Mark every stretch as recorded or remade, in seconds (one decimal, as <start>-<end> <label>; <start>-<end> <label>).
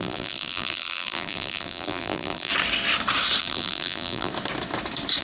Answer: 0.0-2.5 remade; 2.5-3.4 recorded; 3.4-4.3 remade; 4.3-5.2 recorded